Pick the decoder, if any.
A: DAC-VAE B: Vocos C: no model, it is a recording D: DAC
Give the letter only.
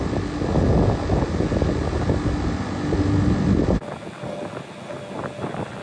C